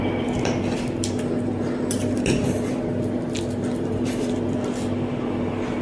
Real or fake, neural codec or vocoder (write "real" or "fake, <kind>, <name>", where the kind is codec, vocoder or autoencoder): real